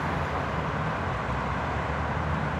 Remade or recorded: recorded